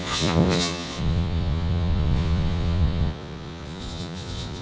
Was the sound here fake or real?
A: fake